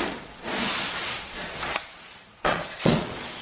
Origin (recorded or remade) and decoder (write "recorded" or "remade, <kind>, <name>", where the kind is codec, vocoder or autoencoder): remade, vocoder, Vocos